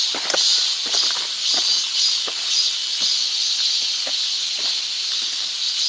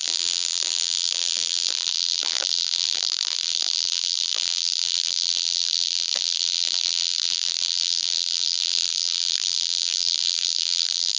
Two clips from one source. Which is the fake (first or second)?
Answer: second